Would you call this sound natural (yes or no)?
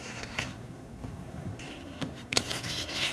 no